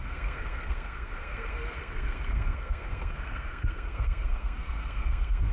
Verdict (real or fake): fake